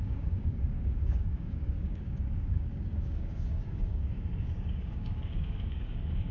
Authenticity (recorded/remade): remade